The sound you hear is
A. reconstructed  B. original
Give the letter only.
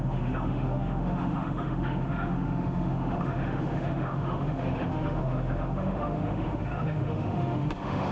A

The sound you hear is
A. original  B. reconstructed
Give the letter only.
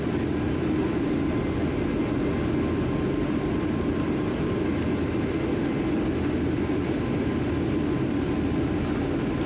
A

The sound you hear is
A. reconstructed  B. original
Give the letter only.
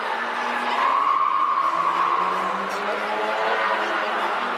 B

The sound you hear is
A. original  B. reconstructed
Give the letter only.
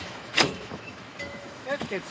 B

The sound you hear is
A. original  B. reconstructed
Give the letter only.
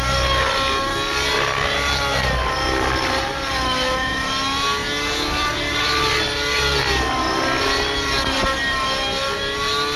A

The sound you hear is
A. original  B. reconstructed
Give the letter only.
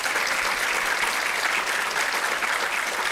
A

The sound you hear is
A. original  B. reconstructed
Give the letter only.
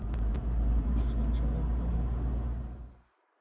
A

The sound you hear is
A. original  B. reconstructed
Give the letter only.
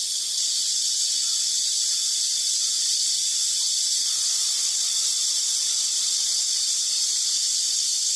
A